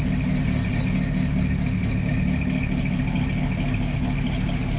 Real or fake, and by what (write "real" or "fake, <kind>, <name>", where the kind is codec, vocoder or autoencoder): real